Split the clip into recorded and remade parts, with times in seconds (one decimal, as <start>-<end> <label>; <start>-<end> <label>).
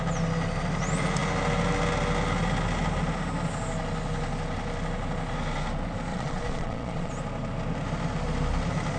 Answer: 0.0-6.1 recorded; 6.1-7.1 remade; 7.1-9.0 recorded